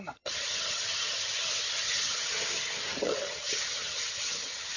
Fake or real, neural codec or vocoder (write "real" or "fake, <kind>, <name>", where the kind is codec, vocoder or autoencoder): fake, vocoder, HiFi-GAN